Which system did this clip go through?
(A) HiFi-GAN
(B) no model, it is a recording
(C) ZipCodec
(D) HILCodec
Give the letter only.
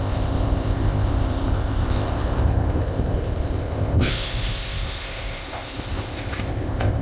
C